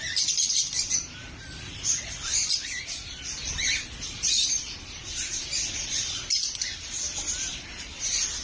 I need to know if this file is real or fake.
fake